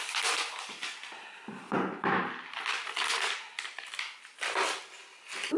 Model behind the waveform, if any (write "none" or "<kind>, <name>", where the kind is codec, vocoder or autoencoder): none